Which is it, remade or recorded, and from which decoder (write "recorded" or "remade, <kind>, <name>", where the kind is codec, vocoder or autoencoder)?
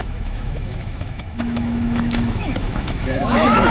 remade, autoencoder, DAC-VAE